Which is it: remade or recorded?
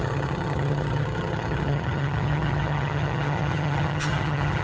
remade